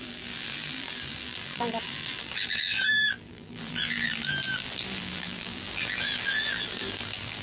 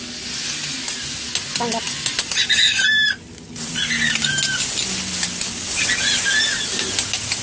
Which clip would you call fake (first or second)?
first